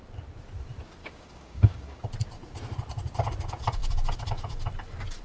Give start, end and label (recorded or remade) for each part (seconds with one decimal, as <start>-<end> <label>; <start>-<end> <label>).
0.0-1.0 recorded; 1.0-2.0 remade; 2.0-5.2 recorded